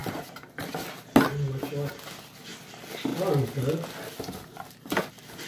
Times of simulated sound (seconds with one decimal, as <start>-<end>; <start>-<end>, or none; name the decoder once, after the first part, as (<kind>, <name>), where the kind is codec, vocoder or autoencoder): none

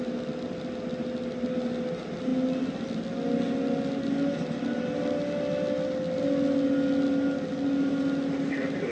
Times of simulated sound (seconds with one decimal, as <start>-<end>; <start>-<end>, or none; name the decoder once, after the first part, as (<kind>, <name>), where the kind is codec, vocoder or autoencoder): none

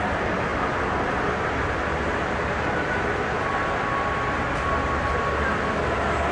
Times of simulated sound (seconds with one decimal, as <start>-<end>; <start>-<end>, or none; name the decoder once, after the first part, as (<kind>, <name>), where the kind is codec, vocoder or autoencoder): none

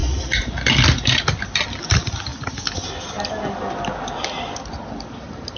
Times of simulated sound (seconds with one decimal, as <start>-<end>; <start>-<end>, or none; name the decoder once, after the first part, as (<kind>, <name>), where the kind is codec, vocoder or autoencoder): none

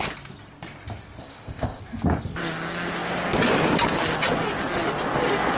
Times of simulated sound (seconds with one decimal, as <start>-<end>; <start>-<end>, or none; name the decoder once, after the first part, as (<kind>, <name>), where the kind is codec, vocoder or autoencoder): 1.2-1.8 (codec, ZipCodec)

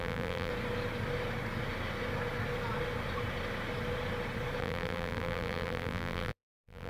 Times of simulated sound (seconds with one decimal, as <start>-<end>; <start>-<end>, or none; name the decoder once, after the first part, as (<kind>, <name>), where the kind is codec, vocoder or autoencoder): 0.0-0.5 (vocoder, BigVGAN v2); 4.6-6.9

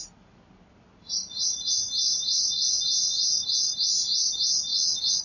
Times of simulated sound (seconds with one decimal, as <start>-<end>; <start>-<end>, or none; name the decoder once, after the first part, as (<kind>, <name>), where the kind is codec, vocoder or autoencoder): 4.7-5.2 (vocoder, Vocos)

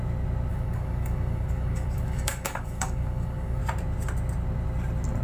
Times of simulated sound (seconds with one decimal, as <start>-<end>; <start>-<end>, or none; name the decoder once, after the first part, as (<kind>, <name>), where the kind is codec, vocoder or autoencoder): 0.5-3.6 (codec, DAC)